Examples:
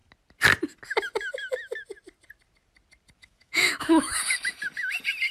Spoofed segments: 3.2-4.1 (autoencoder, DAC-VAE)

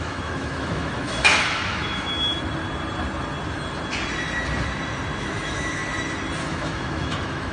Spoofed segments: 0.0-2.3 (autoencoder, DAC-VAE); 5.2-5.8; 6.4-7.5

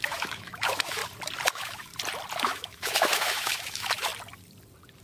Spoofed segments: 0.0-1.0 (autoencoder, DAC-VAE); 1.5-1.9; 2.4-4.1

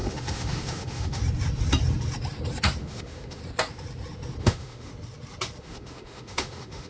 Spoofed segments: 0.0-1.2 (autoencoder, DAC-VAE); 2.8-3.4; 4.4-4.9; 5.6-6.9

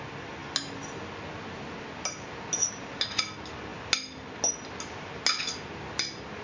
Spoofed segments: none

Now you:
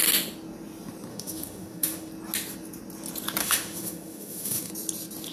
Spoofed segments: 1.1-2.1 (autoencoder, DAC-VAE); 3.4-4.7

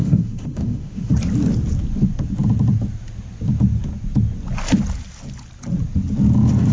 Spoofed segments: 0.0-1.1 (autoencoder, DAC-VAE)

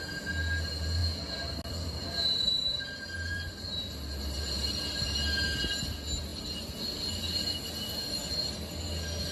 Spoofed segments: none